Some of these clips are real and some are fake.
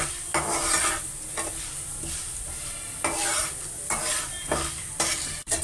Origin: real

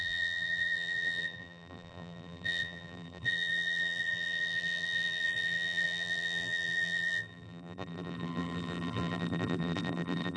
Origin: fake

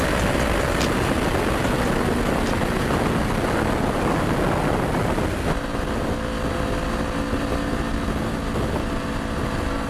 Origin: real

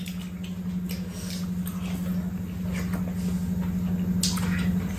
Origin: real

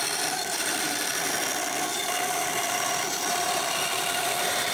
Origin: fake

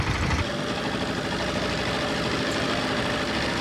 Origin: real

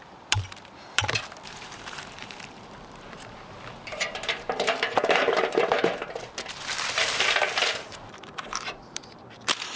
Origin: fake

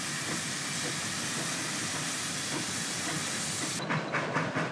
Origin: real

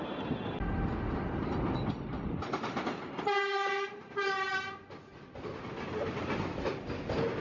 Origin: real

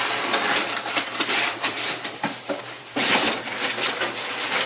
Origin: fake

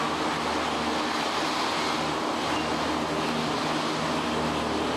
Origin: real